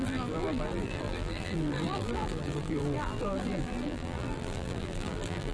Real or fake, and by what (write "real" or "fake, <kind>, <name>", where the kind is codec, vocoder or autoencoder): fake, vocoder, BigVGAN v2